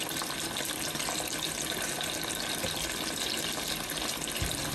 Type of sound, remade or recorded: recorded